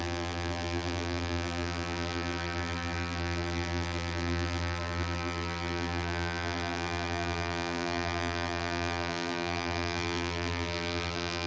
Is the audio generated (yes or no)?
yes